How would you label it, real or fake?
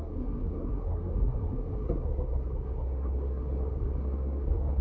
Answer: fake